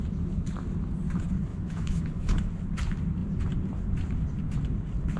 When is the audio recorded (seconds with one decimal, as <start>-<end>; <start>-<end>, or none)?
0.0-1.5; 2.5-5.2